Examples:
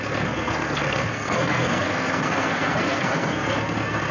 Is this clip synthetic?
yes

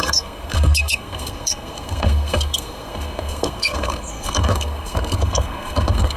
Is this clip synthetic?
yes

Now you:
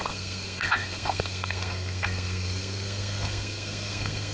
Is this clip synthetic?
yes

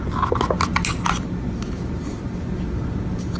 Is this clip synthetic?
no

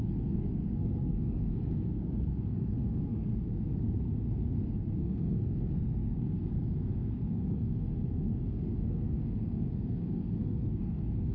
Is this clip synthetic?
yes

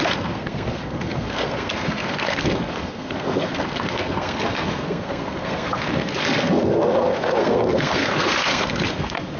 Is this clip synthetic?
yes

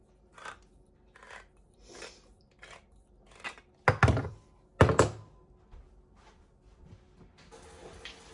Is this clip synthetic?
no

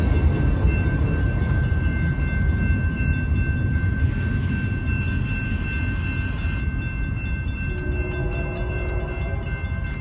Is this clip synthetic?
no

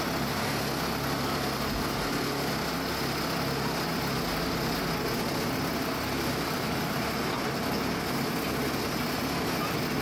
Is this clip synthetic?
no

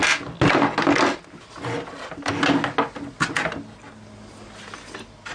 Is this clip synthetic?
no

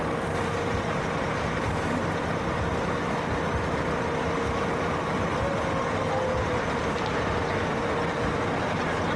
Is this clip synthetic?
no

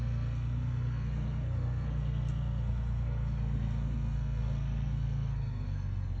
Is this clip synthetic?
yes